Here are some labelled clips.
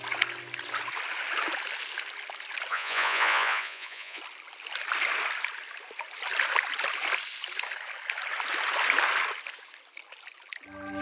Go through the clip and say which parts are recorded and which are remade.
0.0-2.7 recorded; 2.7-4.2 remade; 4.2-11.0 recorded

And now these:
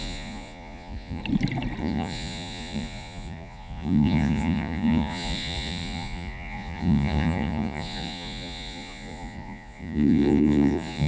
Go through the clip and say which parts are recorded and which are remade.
0.0-1.2 remade; 1.2-1.8 recorded; 1.8-11.1 remade

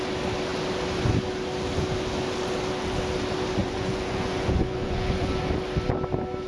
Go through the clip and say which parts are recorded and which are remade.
0.0-3.6 recorded; 3.6-5.4 remade; 5.4-6.5 recorded

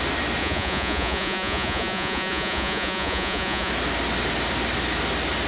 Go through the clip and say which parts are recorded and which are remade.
0.0-0.4 recorded; 0.4-3.7 remade; 3.7-5.5 recorded

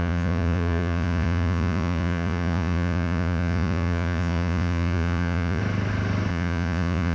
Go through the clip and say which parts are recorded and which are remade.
0.0-5.6 remade; 5.6-6.3 recorded; 6.3-7.1 remade

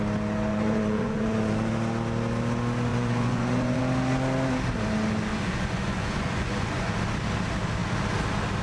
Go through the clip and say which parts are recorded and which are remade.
0.0-0.5 recorded; 0.5-1.7 remade; 1.7-2.9 recorded; 2.9-3.8 remade; 3.8-5.3 recorded; 5.3-6.9 remade; 6.9-8.6 recorded

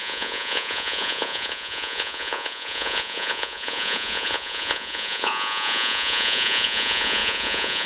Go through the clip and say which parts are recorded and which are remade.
0.0-7.9 remade

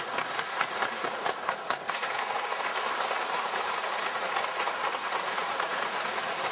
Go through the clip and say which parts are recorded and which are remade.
0.0-2.7 remade; 2.7-3.4 recorded; 3.4-6.5 remade